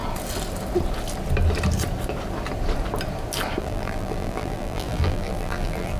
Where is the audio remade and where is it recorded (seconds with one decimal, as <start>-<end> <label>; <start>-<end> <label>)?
0.0-3.6 recorded; 3.6-6.0 remade